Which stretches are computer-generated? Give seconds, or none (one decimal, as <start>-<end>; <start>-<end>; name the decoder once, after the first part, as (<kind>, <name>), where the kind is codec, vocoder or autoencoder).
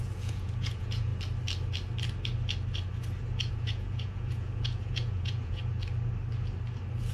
0.0-1.1 (vocoder, Vocos); 3.5-5.6